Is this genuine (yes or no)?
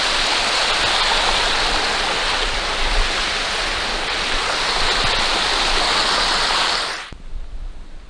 yes